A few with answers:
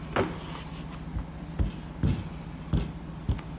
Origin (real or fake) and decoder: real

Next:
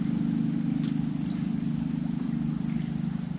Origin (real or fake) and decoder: real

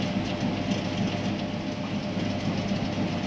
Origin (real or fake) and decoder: real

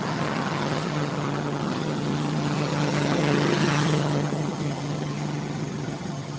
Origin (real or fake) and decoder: fake, vocoder, HiFi-GAN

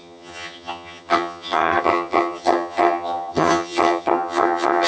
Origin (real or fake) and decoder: fake, vocoder, HiFi-GAN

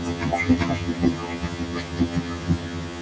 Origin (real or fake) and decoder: fake, vocoder, HiFi-GAN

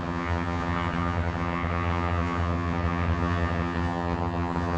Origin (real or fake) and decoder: fake, vocoder, HiFi-GAN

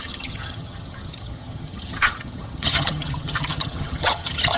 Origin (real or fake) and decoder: fake, vocoder, HiFi-GAN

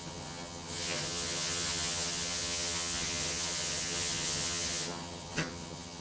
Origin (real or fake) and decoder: fake, vocoder, HiFi-GAN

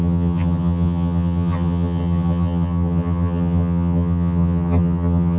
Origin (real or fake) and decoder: fake, vocoder, HiFi-GAN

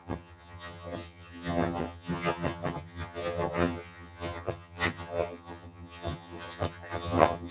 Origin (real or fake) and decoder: fake, vocoder, HiFi-GAN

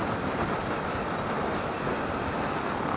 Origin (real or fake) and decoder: real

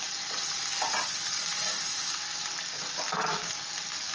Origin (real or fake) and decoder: real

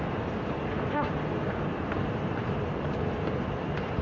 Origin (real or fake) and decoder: real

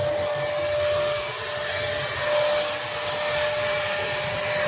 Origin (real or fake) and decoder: real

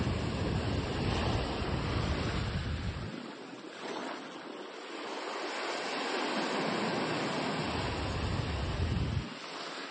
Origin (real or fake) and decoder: real